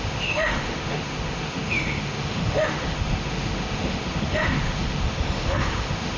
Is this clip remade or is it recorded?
remade